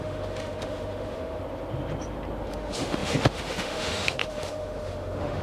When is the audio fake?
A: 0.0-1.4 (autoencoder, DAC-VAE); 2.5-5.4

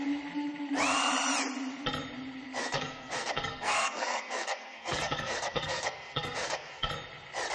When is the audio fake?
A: 2.6-6.9 (codec, SNAC)

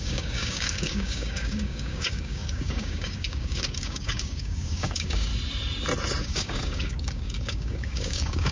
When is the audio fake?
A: 0.0-5.3 (codec, DAC); 6.2-8.5

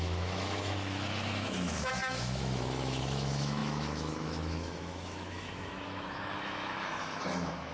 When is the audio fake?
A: 0.0-7.7 (autoencoder, DAC-VAE)